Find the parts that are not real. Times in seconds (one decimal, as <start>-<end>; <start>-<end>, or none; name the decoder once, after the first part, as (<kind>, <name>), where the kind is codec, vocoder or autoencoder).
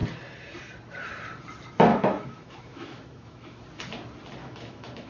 1.9-3.6 (autoencoder, DAC-VAE); 4.4-5.1